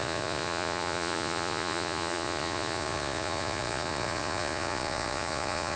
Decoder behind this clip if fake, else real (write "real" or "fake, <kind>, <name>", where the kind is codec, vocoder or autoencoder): fake, vocoder, Vocos